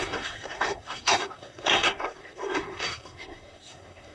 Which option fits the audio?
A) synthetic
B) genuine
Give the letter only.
A